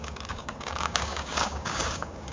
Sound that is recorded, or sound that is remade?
remade